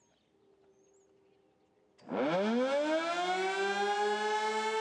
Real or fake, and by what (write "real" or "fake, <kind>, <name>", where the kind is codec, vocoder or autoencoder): real